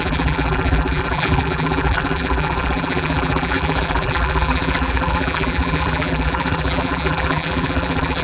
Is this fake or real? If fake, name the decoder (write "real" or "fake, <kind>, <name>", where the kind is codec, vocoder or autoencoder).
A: fake, vocoder, BigVGAN v2